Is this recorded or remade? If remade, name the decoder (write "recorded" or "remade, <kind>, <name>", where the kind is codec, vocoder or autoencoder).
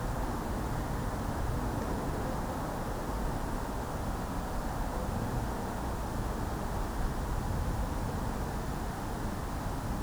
recorded